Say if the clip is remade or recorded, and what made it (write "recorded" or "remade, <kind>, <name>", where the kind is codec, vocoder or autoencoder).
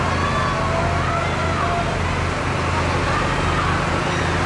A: recorded